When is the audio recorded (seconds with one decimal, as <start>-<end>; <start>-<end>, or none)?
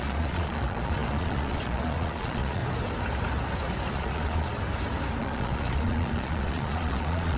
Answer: 2.6-3.9; 4.5-5.2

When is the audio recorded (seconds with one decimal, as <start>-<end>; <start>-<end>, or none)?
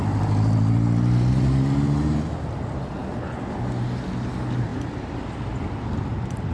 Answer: 0.0-6.5